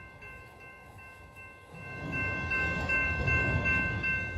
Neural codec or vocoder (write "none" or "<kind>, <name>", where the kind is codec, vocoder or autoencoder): codec, DAC